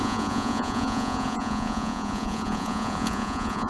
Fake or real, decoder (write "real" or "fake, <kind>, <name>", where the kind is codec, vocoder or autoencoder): fake, vocoder, Vocos